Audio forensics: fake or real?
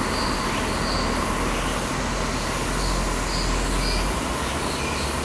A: real